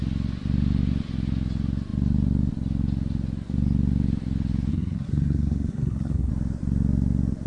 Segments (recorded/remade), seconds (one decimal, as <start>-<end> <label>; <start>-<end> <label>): 0.0-4.7 recorded; 4.7-6.3 remade; 6.3-7.5 recorded